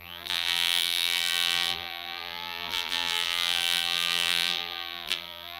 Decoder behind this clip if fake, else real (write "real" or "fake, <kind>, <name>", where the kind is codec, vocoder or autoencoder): fake, vocoder, BigVGAN v2